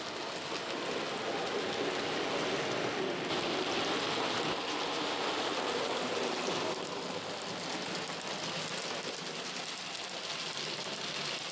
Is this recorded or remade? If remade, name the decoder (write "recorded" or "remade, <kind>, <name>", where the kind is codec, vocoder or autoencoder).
recorded